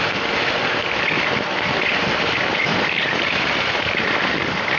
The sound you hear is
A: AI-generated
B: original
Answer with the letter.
B